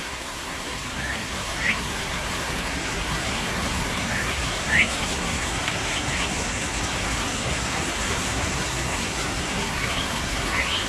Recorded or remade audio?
remade